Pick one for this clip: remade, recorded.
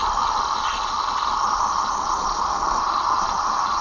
recorded